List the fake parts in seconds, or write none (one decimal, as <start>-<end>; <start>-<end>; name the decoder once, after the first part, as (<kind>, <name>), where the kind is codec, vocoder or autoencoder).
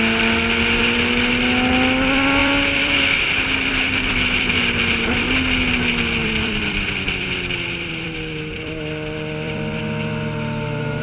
2.4-4.6 (vocoder, BigVGAN v2); 6.2-9.8